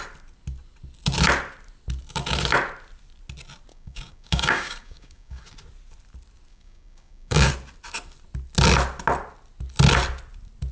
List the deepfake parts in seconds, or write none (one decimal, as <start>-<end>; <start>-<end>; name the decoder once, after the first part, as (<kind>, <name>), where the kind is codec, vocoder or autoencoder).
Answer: 3.7-5.4 (codec, DAC); 6.5-7.5